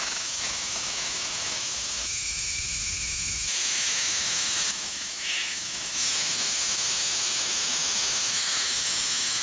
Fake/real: fake